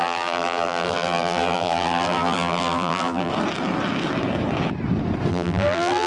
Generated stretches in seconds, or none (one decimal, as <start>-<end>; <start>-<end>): 0.0-3.3; 5.3-6.1